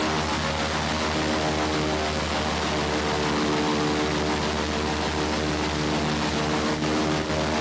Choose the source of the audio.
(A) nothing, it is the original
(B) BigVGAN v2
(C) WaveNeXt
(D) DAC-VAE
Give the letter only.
A